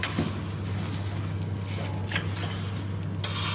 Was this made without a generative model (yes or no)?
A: yes